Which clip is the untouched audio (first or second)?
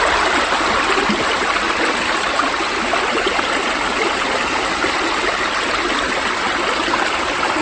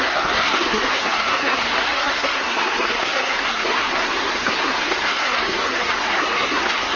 first